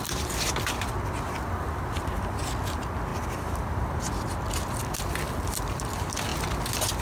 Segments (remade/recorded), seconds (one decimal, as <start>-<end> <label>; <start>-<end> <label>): 0.0-3.1 recorded; 3.1-4.0 remade; 4.0-7.0 recorded

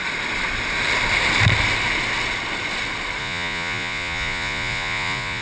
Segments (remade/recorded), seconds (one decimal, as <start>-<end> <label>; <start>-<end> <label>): 0.0-3.2 recorded; 3.2-5.4 remade

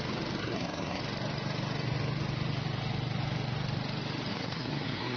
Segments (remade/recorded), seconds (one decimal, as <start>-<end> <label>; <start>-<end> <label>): 0.0-0.4 recorded; 0.4-1.0 remade; 1.0-4.3 recorded; 4.3-5.2 remade

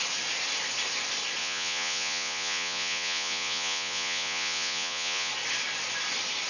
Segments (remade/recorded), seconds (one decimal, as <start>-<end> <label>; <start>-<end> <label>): 0.0-1.4 recorded; 1.4-5.3 remade; 5.3-6.5 recorded

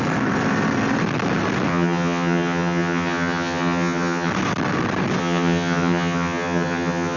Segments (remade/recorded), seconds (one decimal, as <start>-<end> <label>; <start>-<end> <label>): 0.0-1.7 recorded; 1.7-4.3 remade; 4.3-5.2 recorded; 5.2-7.2 remade

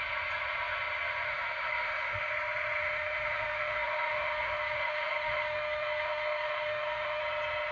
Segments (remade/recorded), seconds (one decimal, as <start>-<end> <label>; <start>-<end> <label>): 0.0-1.3 recorded; 1.3-2.3 remade; 2.3-2.8 recorded; 2.8-7.2 remade; 7.2-7.7 recorded

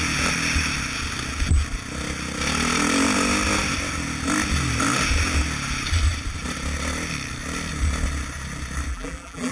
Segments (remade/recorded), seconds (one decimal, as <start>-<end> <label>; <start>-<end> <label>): 0.0-8.9 recorded; 8.9-9.5 remade

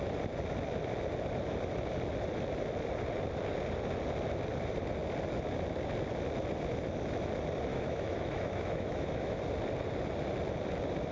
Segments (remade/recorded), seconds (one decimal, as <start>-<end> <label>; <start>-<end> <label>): 0.0-7.7 recorded; 7.7-9.4 remade; 9.4-11.1 recorded